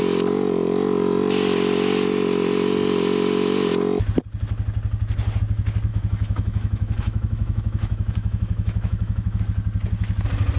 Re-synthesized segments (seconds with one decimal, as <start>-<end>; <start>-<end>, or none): 5.9-9.4